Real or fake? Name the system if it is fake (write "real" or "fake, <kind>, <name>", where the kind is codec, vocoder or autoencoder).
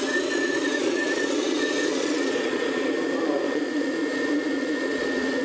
fake, vocoder, Vocos